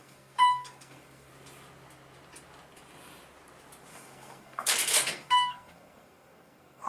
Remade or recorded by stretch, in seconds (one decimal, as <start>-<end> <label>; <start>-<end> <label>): 0.0-1.3 remade; 1.3-3.9 recorded; 3.9-6.9 remade